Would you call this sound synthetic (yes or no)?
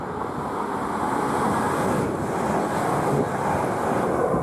no